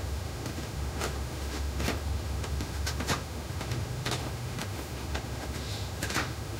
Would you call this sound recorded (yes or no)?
no